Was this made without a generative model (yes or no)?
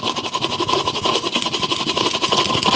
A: yes